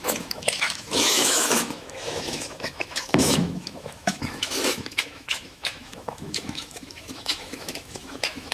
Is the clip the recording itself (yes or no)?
no